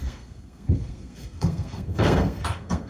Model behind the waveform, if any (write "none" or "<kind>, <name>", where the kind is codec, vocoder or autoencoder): codec, SNAC